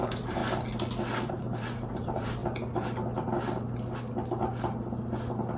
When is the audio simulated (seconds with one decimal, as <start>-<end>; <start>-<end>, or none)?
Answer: 0.0-0.4; 1.3-2.4